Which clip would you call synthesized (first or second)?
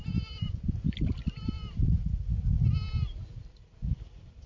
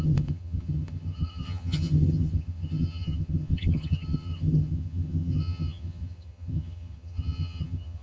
second